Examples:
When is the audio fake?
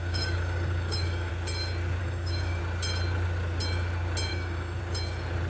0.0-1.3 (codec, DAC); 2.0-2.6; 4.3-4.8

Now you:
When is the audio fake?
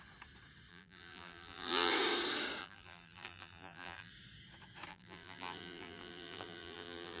0.7-1.9 (vocoder, BigVGAN v2); 2.6-4.1; 4.9-7.2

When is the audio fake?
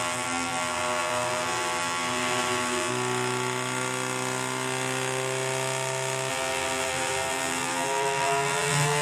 0.0-2.9 (vocoder, BigVGAN v2); 6.3-9.0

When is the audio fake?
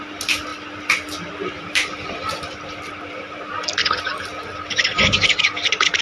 0.5-3.4 (vocoder, BigVGAN v2)